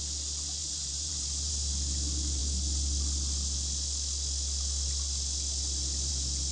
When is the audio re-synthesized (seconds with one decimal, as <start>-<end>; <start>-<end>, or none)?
0.6-1.7